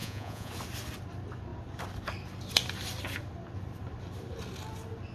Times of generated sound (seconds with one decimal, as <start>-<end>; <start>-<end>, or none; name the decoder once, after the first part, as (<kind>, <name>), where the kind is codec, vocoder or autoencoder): 0.0-0.5 (vocoder, Vocos)